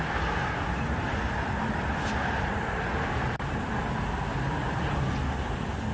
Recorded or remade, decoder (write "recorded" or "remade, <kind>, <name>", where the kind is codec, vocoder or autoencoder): recorded